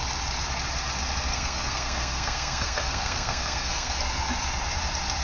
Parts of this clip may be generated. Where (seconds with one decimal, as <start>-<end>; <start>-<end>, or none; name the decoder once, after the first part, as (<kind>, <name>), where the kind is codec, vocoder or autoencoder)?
1.3-4.0 (codec, SNAC)